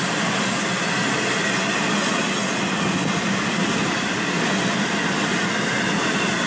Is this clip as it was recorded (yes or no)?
yes